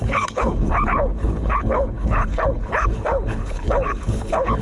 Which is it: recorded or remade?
remade